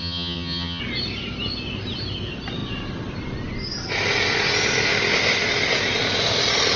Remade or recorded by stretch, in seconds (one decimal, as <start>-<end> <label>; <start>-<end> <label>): 0.0-0.8 remade; 0.8-6.8 recorded

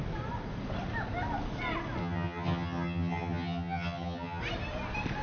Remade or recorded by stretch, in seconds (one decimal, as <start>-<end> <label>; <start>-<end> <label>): 0.0-2.0 recorded; 2.0-4.4 remade; 4.4-5.2 recorded

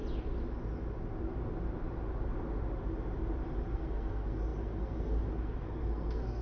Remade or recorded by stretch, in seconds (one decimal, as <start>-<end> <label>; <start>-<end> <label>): 0.0-3.7 recorded; 3.7-6.4 remade

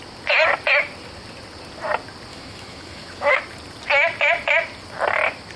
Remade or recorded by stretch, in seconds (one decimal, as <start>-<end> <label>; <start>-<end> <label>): 0.0-2.3 recorded; 2.3-3.4 remade; 3.4-5.6 recorded

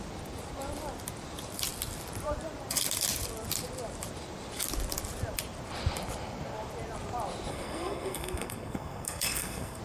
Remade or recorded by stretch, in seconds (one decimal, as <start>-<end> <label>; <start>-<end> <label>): 0.0-7.5 recorded; 7.5-9.8 remade

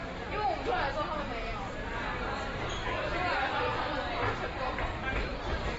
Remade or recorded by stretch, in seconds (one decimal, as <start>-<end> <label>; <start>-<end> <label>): 0.0-1.5 recorded; 1.5-5.0 remade; 5.0-5.8 recorded